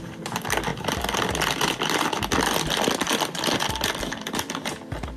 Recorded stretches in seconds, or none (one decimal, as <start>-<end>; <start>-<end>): 0.0-0.7; 3.8-5.2